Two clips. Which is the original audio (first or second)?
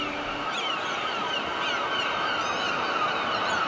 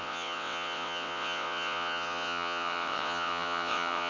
first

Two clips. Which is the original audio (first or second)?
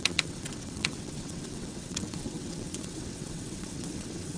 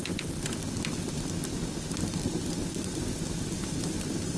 second